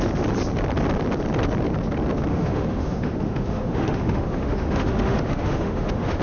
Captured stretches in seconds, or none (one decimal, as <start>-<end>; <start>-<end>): 0.0-2.3